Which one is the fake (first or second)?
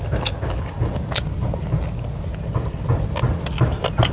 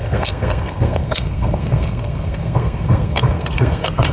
second